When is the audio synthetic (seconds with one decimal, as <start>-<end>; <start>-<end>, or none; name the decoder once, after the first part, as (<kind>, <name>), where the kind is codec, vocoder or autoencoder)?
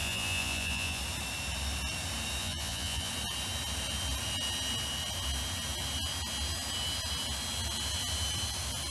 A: 0.0-1.0 (vocoder, Vocos); 2.4-3.1